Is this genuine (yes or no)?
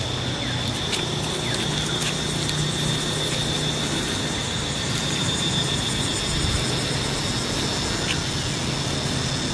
yes